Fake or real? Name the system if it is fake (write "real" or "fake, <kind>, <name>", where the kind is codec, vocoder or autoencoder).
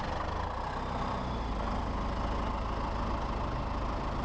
real